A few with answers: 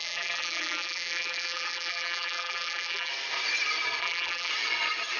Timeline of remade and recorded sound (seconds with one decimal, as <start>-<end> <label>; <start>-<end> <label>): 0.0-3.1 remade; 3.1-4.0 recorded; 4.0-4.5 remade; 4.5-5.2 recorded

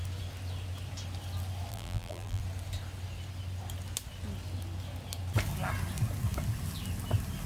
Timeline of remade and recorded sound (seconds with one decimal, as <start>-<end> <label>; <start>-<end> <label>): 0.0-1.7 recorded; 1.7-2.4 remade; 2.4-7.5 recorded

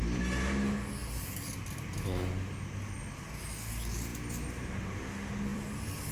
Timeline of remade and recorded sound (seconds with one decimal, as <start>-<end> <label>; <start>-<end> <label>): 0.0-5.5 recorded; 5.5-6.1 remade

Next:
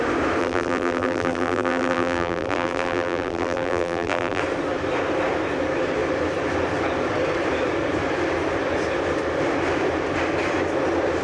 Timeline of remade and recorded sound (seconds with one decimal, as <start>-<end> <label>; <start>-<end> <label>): 0.0-0.4 recorded; 0.4-4.4 remade; 4.4-11.2 recorded